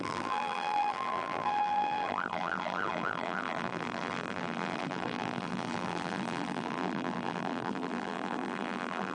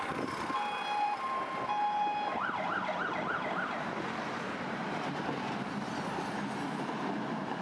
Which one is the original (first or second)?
second